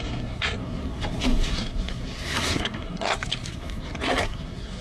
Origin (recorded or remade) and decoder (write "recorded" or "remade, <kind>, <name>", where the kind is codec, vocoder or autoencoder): remade, codec, SNAC